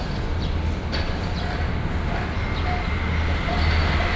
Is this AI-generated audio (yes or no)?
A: no